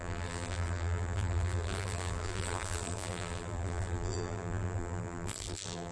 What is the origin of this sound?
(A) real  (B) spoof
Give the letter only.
B